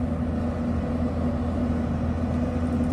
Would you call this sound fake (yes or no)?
no